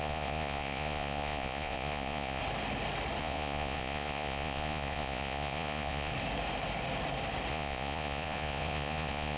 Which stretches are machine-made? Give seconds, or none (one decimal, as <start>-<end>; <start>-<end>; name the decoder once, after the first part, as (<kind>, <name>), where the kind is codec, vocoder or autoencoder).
0.0-2.4 (vocoder, Vocos); 3.2-6.1; 7.5-9.4